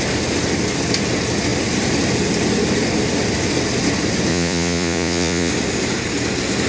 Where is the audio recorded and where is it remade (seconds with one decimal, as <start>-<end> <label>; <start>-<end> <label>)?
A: 0.0-4.3 recorded; 4.3-5.5 remade; 5.5-6.7 recorded